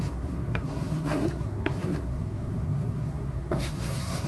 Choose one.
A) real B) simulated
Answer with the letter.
B